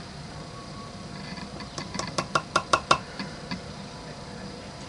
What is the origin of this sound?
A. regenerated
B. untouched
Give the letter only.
A